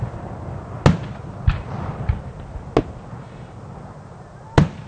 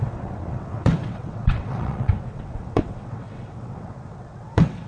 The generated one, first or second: second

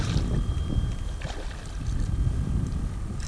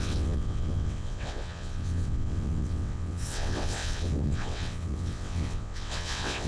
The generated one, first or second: second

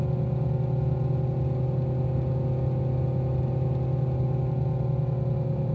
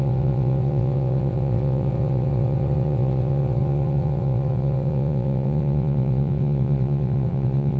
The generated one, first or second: second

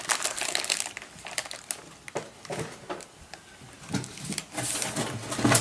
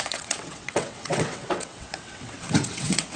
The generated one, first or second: second